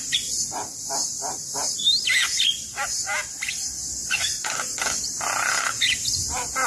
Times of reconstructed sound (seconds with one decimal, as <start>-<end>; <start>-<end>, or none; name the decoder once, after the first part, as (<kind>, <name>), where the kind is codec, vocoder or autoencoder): 4.0-4.8 (vocoder, Vocos)